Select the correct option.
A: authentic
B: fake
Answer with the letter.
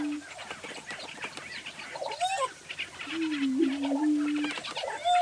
A